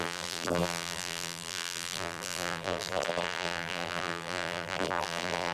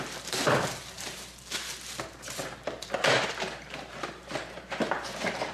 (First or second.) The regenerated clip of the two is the first